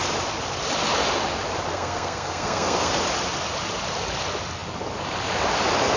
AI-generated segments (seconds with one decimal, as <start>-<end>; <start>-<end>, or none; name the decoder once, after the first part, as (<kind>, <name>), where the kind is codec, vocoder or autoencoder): 1.7-2.9 (codec, SNAC)

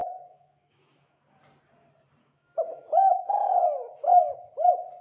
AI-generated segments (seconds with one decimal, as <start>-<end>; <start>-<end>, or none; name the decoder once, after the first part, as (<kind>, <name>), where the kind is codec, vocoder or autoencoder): 0.0-1.4 (autoencoder, DAC-VAE); 2.2-4.4

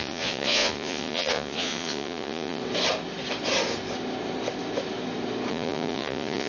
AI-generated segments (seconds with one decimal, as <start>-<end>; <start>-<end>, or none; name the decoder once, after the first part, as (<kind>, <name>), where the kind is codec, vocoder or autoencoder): 0.0-2.6 (vocoder, Vocos); 5.5-6.5